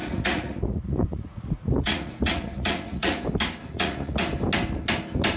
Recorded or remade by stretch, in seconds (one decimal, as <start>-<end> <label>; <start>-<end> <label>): 0.0-3.2 remade; 3.2-3.6 recorded; 3.6-4.2 remade; 4.2-5.4 recorded